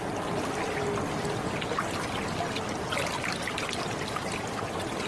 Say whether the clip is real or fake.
real